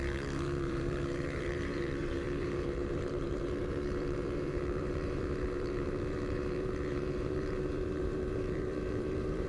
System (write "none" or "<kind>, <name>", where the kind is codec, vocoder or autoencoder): vocoder, BigVGAN v2